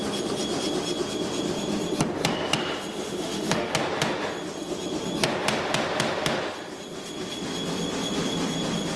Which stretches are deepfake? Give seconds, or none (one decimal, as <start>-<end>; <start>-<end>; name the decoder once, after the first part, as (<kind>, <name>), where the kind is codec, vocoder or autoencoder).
2.9-3.7 (autoencoder, DAC-VAE)